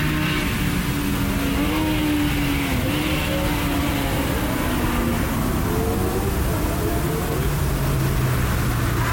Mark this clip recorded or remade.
recorded